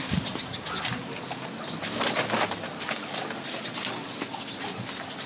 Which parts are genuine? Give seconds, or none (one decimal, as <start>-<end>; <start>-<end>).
0.0-5.3